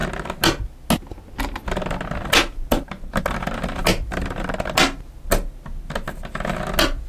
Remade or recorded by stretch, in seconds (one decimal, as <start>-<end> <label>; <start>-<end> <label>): 0.0-7.1 recorded